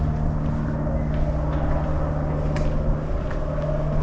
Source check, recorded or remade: recorded